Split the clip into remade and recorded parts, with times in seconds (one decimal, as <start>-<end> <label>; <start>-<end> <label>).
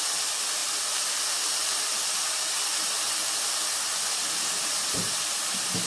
0.0-5.9 recorded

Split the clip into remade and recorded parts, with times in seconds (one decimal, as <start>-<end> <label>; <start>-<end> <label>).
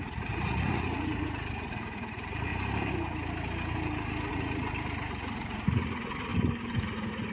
0.0-2.5 remade; 2.5-4.3 recorded; 4.3-6.3 remade; 6.3-6.8 recorded; 6.8-7.3 remade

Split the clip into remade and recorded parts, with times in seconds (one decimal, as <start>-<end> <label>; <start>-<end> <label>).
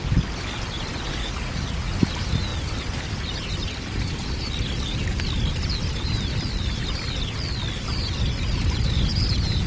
0.0-1.2 recorded; 1.2-1.9 remade; 1.9-9.7 recorded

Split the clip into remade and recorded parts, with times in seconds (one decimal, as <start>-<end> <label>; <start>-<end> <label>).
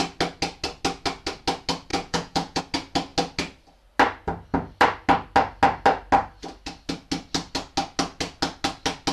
0.0-1.9 recorded; 1.9-2.6 remade; 2.6-9.1 recorded